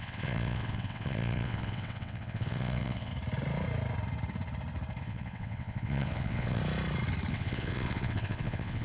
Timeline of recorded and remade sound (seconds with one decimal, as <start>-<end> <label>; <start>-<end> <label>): 0.0-3.1 remade; 3.1-5.0 recorded; 5.0-6.6 remade; 6.6-7.3 recorded; 7.3-8.8 remade